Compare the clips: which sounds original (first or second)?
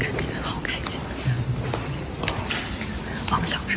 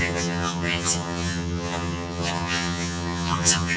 first